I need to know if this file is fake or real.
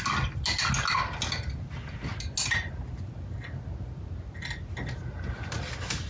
real